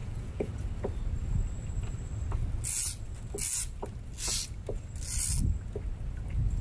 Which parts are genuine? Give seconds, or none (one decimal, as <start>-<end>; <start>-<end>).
0.5-6.6